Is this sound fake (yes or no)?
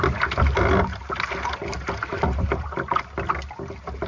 no